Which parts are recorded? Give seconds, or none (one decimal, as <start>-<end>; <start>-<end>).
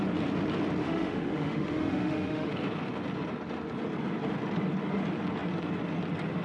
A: 0.0-0.8; 2.5-6.4